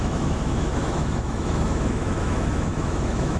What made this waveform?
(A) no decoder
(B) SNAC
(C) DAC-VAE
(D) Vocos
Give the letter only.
C